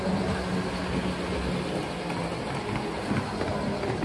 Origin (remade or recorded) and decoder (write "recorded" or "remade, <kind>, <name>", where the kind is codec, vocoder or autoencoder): recorded